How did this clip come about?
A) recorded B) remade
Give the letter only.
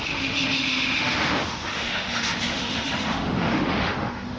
B